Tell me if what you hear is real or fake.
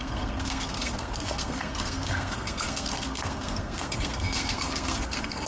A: fake